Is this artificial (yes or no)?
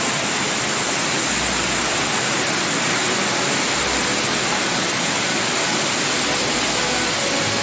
no